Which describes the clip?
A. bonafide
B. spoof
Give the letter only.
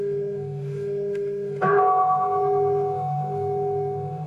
B